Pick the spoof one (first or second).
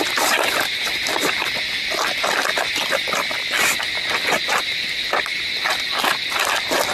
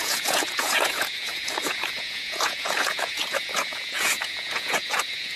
second